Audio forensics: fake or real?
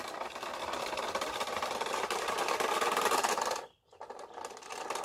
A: fake